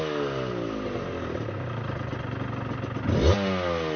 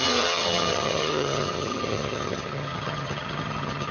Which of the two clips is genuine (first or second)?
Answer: first